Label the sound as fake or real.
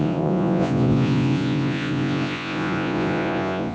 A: fake